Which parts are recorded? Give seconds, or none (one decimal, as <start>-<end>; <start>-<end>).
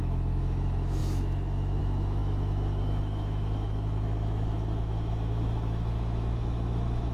none